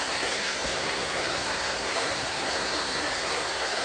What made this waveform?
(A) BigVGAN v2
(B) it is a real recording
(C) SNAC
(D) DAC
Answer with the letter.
C